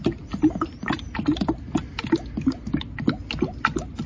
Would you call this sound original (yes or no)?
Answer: yes